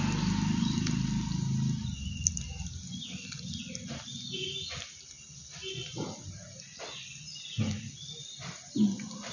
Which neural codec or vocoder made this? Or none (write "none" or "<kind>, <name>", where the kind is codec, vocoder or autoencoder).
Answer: none